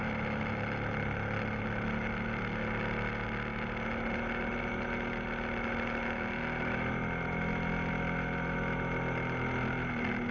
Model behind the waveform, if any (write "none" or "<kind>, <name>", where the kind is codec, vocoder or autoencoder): none